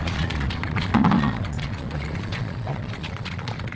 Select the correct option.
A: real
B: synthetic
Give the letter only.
B